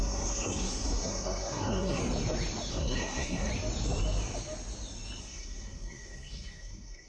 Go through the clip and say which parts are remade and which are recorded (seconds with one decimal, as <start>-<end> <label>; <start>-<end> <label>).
0.0-2.0 remade; 2.0-2.7 recorded; 2.7-3.5 remade; 3.5-5.2 recorded; 5.2-7.1 remade